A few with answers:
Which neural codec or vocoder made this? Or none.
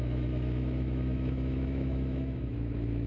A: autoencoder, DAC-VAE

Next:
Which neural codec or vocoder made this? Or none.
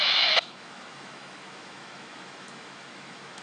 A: autoencoder, DAC-VAE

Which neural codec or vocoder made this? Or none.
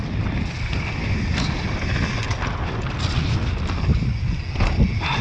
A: none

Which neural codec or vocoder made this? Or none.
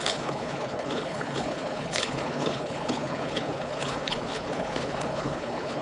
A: codec, HILCodec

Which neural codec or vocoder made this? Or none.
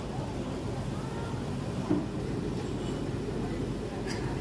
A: none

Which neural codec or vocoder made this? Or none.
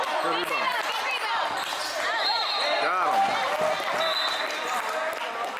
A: none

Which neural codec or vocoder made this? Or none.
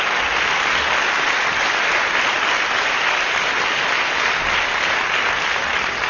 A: none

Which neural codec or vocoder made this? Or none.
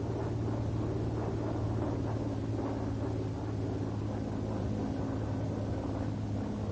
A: none